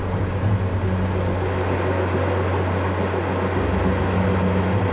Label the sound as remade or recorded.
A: recorded